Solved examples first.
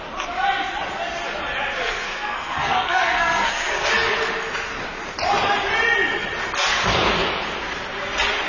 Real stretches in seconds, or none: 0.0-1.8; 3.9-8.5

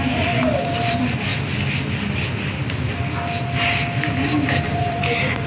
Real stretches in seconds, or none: 1.3-4.6

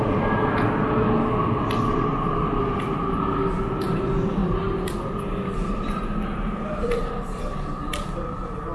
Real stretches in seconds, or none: 0.0-8.7

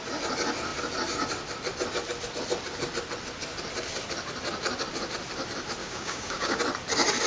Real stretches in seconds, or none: 0.0-5.8; 6.6-7.3

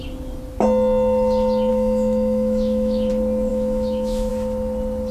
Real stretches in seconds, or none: 0.0-1.7; 3.1-3.5; 4.3-5.1

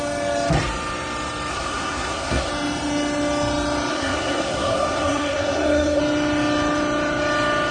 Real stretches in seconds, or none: 0.0-1.5; 2.5-3.9; 6.0-7.7

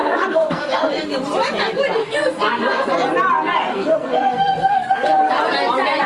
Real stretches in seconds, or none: 0.9-2.0; 2.9-3.7; 5.2-6.1